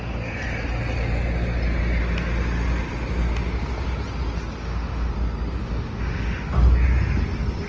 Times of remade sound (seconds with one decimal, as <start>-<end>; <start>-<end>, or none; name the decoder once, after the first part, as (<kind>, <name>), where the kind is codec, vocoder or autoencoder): 4.6-5.1 (autoencoder, DAC-VAE); 5.6-6.5